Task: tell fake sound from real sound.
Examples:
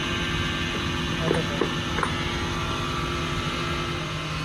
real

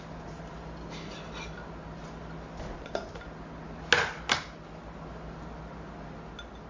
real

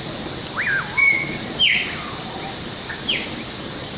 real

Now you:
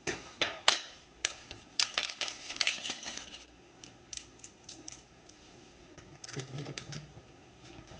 fake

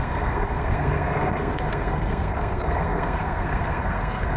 fake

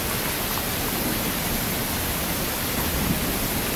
real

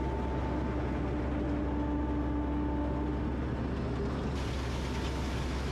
real